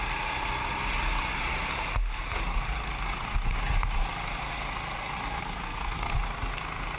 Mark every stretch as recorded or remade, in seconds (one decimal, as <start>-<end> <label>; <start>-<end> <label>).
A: 0.0-5.4 recorded; 5.4-6.1 remade; 6.1-7.0 recorded